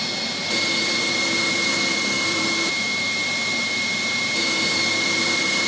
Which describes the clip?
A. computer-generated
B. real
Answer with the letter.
A